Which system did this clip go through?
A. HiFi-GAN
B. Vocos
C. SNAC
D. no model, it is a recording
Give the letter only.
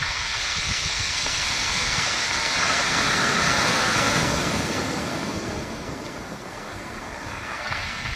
C